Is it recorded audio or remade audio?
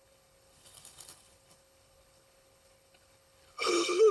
remade